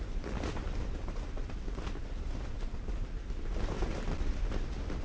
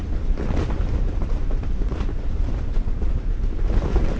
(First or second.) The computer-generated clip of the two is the second